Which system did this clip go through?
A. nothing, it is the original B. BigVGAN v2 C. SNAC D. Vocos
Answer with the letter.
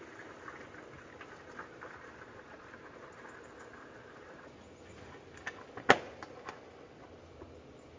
A